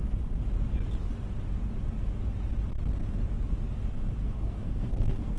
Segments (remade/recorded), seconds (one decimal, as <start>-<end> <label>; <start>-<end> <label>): 0.0-4.2 recorded; 4.2-5.4 remade